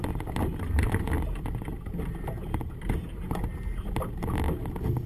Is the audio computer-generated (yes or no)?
no